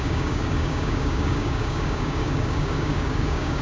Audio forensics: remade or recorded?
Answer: remade